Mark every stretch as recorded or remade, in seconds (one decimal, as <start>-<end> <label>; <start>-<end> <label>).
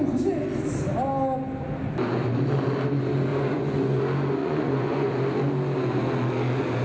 0.0-3.3 recorded; 3.3-4.0 remade; 4.0-4.4 recorded; 4.4-5.1 remade; 5.1-6.8 recorded